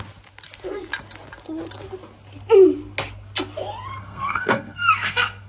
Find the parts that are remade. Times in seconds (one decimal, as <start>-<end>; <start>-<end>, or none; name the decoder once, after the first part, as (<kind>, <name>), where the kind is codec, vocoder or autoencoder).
4.0-5.5 (codec, SNAC)